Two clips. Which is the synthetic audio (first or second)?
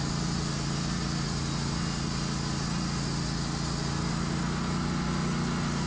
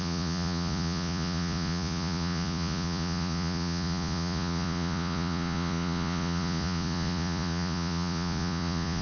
second